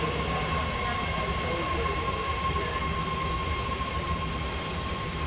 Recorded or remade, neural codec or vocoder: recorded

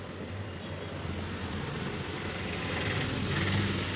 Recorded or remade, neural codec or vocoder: recorded